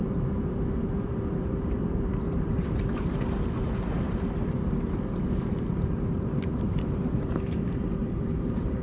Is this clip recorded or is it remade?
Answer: remade